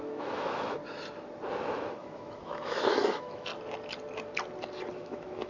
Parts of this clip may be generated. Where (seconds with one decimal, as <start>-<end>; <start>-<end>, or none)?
0.0-0.8; 1.9-3.5; 4.9-5.5